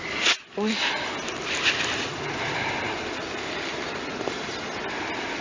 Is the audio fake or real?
real